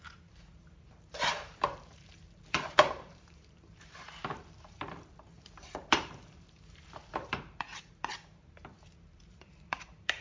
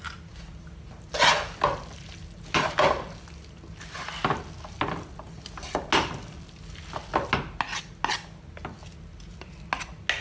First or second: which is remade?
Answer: first